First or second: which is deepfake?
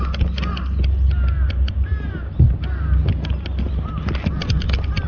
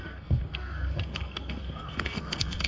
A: second